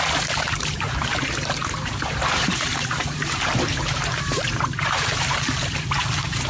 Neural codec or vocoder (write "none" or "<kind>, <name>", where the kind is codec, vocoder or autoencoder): vocoder, BigVGAN v2